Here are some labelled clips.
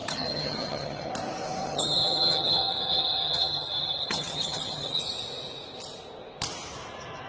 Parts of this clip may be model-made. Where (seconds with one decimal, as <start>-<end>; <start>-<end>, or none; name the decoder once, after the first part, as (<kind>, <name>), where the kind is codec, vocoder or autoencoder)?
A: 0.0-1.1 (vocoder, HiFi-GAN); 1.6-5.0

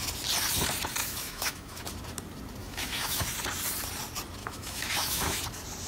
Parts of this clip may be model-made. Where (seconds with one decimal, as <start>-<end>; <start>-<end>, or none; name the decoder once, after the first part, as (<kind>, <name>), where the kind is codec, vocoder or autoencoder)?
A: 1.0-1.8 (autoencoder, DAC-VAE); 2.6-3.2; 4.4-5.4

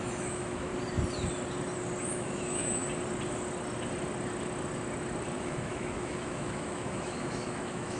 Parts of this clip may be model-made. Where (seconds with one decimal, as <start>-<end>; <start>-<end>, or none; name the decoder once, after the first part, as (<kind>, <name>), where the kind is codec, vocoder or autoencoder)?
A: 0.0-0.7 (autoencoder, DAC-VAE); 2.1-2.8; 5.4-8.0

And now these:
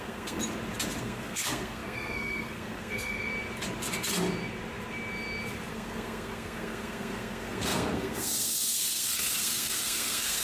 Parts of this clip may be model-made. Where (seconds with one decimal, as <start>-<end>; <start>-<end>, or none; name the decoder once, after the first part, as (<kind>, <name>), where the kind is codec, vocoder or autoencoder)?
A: 0.0-0.4 (codec, SNAC); 1.0-3.3; 5.7-10.4